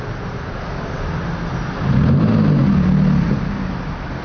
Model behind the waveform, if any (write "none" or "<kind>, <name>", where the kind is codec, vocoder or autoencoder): none